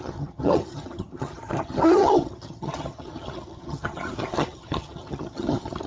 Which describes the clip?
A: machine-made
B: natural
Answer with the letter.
A